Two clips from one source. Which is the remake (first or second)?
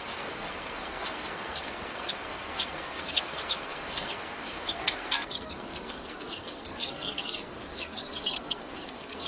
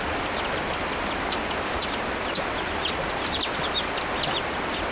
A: first